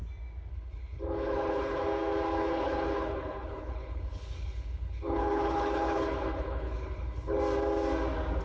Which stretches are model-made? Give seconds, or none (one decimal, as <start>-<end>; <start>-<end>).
0.5-1.8; 2.4-7.4